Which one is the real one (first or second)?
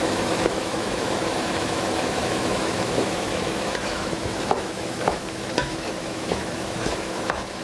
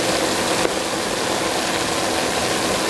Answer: second